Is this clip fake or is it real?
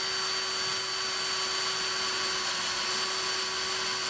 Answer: real